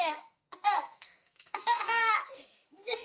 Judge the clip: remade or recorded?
remade